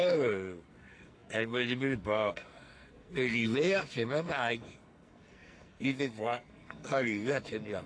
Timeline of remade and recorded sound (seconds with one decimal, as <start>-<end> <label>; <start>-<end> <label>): 0.0-7.9 remade